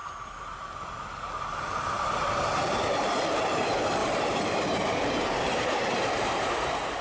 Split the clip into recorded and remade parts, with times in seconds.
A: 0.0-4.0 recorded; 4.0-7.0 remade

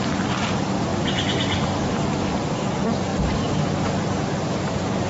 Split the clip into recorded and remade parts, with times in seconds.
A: 0.0-5.1 recorded

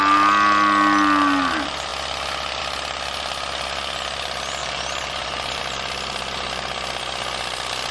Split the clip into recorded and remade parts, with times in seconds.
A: 0.0-4.6 recorded; 4.6-5.6 remade; 5.6-7.9 recorded

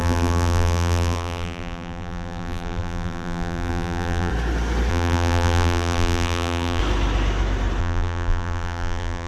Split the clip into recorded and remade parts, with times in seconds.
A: 0.0-4.3 remade; 4.3-4.9 recorded; 4.9-6.8 remade; 6.8-7.8 recorded; 7.8-9.3 remade

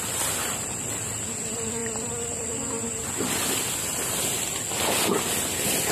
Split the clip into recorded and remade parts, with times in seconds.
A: 0.0-5.9 recorded

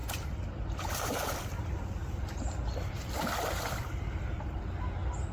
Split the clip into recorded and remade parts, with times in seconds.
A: 0.0-1.4 remade; 1.4-5.3 recorded

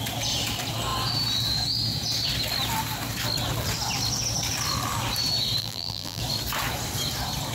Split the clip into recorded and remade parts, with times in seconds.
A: 0.0-5.6 recorded; 5.6-6.2 remade; 6.2-7.5 recorded